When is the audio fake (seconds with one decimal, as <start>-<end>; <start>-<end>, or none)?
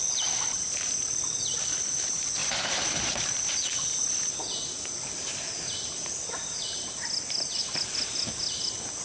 none